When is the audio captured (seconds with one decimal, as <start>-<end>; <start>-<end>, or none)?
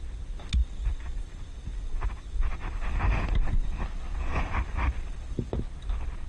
0.0-6.3